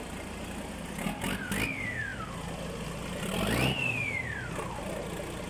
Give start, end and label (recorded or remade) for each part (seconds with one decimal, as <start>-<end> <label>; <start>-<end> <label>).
0.0-5.5 recorded